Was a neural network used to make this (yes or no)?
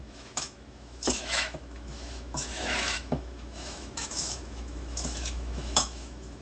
yes